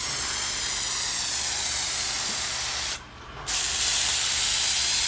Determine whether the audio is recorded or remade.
recorded